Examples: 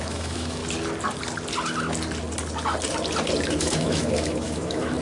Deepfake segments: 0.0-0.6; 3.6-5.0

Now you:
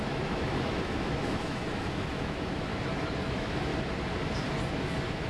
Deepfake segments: 0.0-2.7; 3.2-3.7; 4.8-5.3

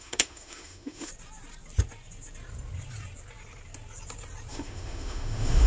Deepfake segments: 0.0-1.1; 4.5-5.7

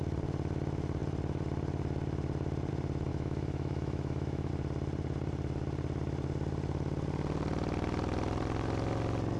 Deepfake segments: 3.1-4.5

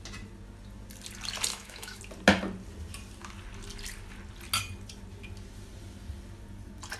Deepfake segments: 1.5-2.0

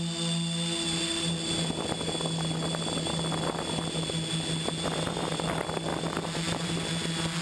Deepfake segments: none

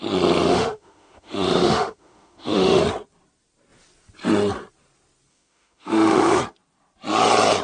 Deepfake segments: 0.5-2.8; 5.3-6.4